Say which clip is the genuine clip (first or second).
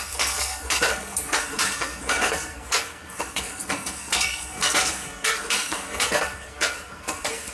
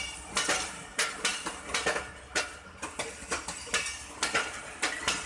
second